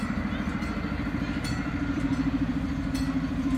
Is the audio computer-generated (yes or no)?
yes